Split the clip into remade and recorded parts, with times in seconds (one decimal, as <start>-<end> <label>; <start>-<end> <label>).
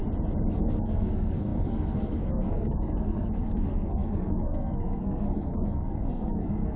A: 0.0-0.5 recorded; 0.5-6.8 remade